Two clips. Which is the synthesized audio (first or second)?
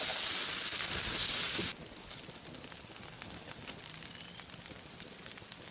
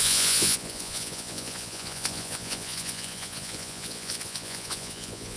second